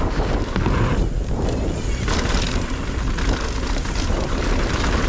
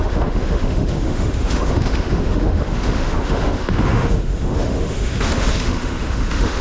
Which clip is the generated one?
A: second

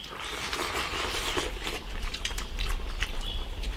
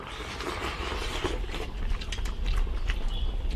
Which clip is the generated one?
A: first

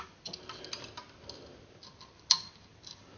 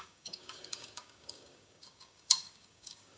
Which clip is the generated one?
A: second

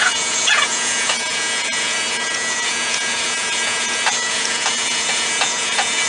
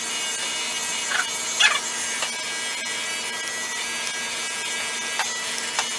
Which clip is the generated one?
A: first